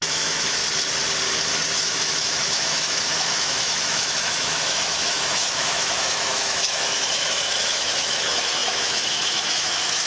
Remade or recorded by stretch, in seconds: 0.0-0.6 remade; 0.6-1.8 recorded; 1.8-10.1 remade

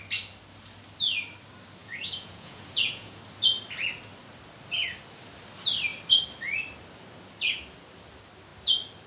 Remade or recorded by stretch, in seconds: 0.0-1.8 recorded; 1.8-3.2 remade; 3.2-9.1 recorded

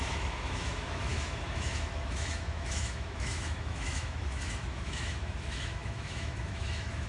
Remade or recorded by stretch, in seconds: 0.0-7.1 remade

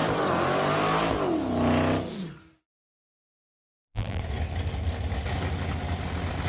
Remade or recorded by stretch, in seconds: 0.0-3.3 recorded; 3.3-4.2 remade; 4.2-6.5 recorded

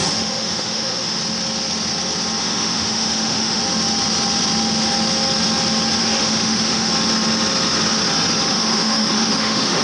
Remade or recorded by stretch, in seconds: 0.0-1.2 remade; 1.2-2.4 recorded; 2.4-3.6 remade; 3.6-6.0 recorded; 6.0-6.9 remade; 6.9-8.5 recorded; 8.5-9.8 remade